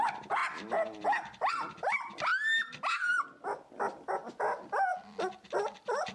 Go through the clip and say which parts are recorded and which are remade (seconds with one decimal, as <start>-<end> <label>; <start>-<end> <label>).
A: 0.0-6.1 recorded